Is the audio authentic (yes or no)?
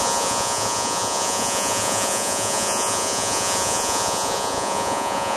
no